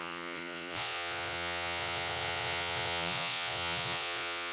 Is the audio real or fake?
fake